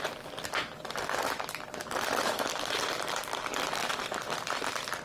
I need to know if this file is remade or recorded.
remade